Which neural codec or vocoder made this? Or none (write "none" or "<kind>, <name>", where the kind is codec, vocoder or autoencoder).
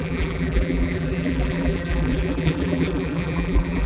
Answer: vocoder, BigVGAN v2